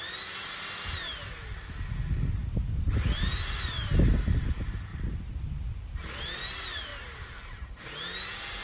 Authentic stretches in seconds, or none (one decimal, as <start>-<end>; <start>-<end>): 0.0-8.6